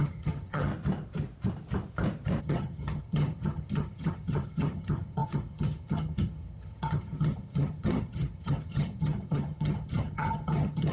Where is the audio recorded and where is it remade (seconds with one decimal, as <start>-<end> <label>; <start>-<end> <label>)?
0.0-0.7 remade; 0.7-2.4 recorded; 2.4-10.9 remade